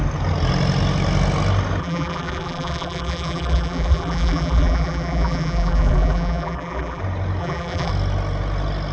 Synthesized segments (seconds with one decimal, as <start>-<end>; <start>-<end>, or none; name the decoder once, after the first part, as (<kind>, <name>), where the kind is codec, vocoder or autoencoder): 1.8-7.0 (vocoder, BigVGAN v2); 7.4-7.9